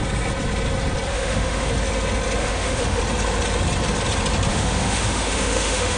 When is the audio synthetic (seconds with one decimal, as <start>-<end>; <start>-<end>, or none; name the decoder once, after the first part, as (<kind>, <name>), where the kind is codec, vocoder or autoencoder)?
1.1-1.7 (autoencoder, DAC-VAE); 2.4-3.0; 4.5-6.0